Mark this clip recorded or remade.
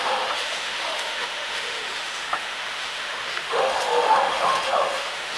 remade